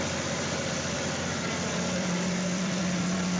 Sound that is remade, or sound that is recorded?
remade